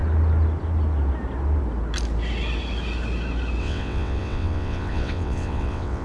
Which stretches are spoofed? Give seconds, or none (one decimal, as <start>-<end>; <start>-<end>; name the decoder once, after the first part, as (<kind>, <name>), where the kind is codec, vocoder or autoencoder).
3.6-6.0 (vocoder, WaveNeXt)